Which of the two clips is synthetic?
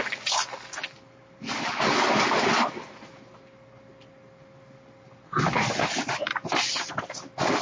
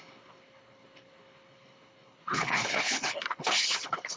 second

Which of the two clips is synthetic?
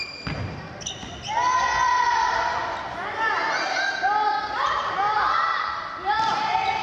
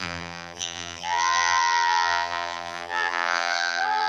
second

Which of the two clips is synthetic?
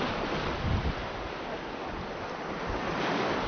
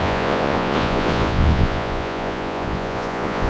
second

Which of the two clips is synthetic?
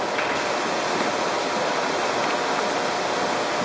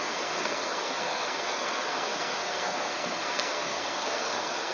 second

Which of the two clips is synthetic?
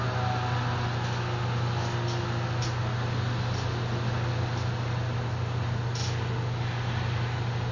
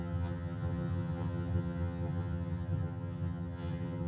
second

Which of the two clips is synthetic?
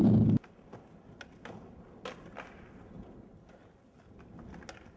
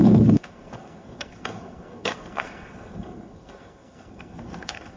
second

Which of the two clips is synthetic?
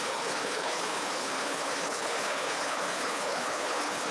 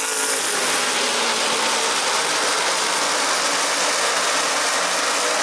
first